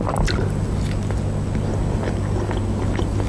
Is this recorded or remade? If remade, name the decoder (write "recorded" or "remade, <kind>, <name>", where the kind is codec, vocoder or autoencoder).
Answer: recorded